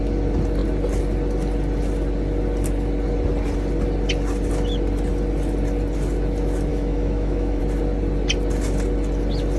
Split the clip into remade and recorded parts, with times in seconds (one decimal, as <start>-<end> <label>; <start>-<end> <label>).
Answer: 0.0-6.7 recorded; 6.7-7.6 remade; 7.6-9.6 recorded

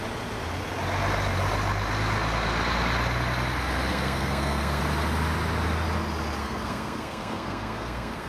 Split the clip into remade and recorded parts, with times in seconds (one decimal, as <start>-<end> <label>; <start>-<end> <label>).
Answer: 0.0-3.9 recorded; 3.9-4.8 remade; 4.8-6.4 recorded; 6.4-8.3 remade

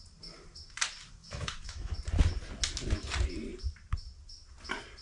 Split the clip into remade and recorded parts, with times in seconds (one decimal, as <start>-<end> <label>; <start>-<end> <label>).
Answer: 0.0-1.2 recorded; 1.2-1.9 remade; 1.9-5.0 recorded

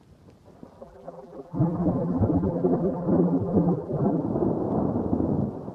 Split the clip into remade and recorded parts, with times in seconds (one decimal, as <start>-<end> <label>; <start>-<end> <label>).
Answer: 0.0-0.8 recorded; 0.8-4.2 remade; 4.2-5.7 recorded

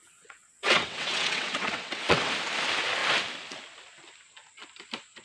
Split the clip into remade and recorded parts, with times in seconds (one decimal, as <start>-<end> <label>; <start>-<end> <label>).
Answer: 0.0-2.3 remade; 2.3-5.2 recorded

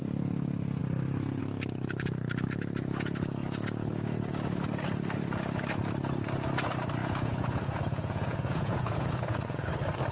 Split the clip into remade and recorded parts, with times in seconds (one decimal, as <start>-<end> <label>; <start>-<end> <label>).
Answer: 0.0-7.0 recorded; 7.0-9.7 remade; 9.7-10.1 recorded